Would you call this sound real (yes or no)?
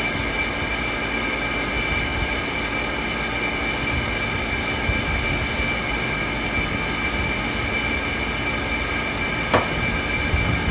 yes